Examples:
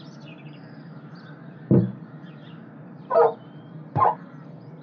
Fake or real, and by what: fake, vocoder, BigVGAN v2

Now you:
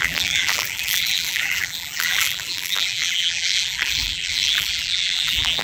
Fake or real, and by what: fake, vocoder, BigVGAN v2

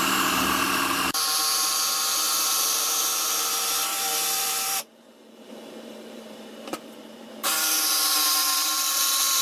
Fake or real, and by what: fake, vocoder, BigVGAN v2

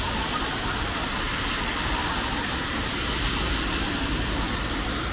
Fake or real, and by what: fake, vocoder, BigVGAN v2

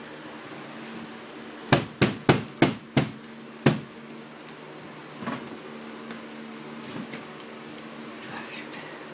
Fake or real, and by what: real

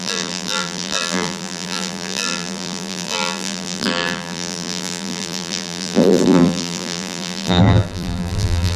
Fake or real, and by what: fake, vocoder, BigVGAN v2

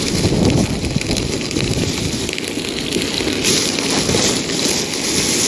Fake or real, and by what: real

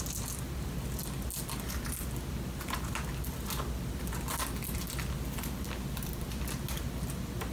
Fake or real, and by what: real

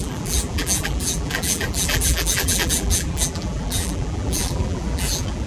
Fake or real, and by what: fake, vocoder, BigVGAN v2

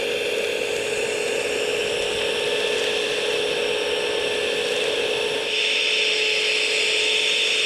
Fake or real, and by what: real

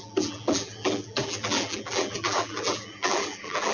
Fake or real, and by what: fake, vocoder, BigVGAN v2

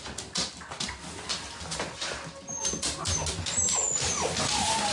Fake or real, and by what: real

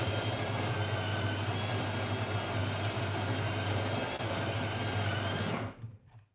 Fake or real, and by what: real